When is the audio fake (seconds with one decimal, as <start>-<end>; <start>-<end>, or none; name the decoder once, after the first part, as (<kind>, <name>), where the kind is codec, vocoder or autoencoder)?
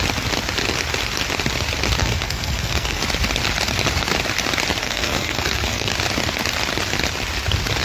2.0-3.0 (codec, SNAC); 4.8-5.9